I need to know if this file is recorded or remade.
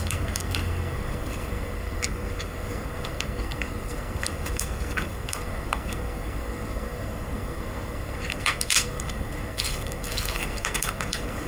remade